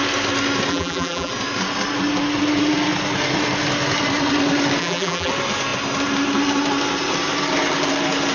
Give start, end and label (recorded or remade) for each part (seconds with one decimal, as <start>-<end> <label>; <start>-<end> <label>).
0.0-0.7 recorded; 0.7-1.3 remade; 1.3-4.8 recorded; 4.8-5.3 remade; 5.3-8.3 recorded